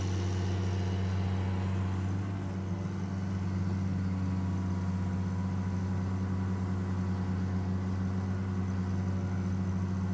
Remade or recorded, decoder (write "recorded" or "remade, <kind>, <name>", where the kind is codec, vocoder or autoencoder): recorded